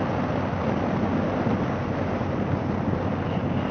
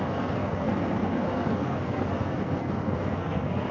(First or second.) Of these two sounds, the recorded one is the first